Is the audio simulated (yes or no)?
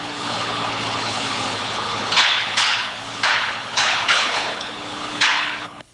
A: yes